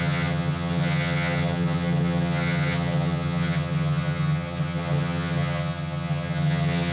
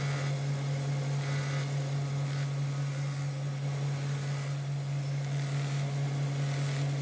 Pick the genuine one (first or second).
second